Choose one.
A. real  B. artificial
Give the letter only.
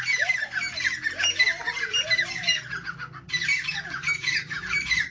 A